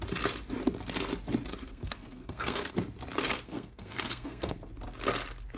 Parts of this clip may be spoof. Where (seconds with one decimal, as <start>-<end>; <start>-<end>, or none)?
1.5-2.7; 3.3-4.7